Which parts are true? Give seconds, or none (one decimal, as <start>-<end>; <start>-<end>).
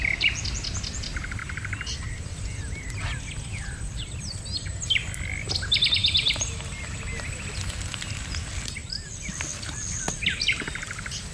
0.0-1.4; 4.4-8.8; 10.0-11.3